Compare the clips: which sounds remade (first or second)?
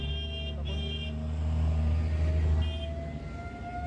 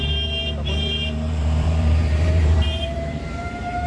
second